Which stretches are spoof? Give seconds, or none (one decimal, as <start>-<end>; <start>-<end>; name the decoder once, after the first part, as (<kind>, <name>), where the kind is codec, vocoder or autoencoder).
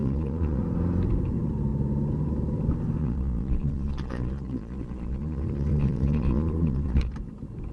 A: 0.0-0.6 (vocoder, Vocos); 3.0-7.1